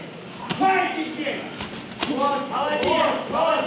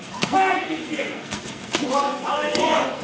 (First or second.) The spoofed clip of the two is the second